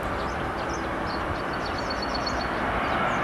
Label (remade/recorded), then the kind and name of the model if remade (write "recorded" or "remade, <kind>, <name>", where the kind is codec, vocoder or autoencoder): recorded